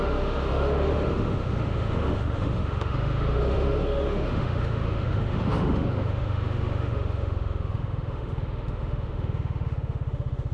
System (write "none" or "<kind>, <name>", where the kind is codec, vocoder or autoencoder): autoencoder, DAC-VAE